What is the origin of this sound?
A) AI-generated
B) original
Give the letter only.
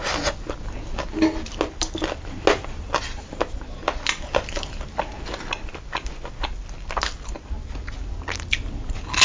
B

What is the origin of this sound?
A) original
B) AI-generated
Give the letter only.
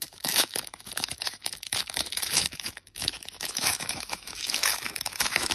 B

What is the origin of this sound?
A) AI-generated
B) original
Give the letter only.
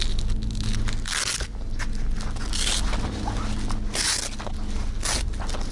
B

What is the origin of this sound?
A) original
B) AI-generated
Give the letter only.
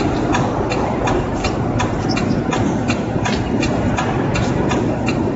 A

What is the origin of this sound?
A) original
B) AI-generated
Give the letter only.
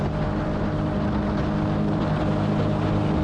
A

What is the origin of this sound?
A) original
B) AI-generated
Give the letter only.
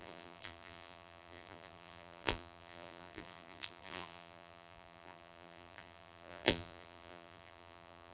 B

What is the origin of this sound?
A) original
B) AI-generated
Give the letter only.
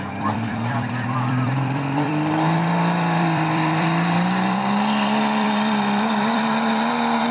B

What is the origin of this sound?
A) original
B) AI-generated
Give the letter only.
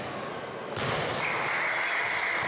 A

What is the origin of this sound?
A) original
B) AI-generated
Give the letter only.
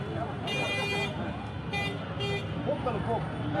A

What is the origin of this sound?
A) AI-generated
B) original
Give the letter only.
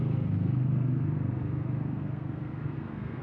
A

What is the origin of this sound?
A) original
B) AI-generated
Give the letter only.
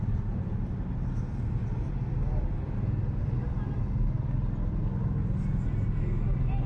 A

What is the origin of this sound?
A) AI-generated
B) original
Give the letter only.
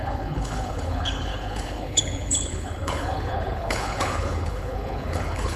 A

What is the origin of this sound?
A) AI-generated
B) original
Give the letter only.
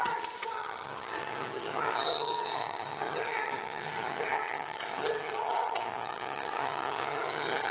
A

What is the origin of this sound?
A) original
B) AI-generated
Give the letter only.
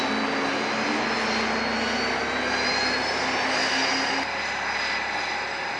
A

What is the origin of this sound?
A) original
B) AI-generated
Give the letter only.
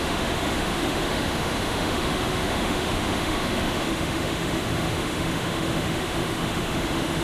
B